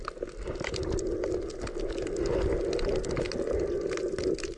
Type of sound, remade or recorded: recorded